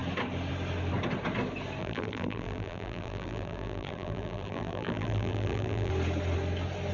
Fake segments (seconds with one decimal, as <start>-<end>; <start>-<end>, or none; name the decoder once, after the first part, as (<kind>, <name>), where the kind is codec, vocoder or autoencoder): 1.8-5.9 (vocoder, BigVGAN v2)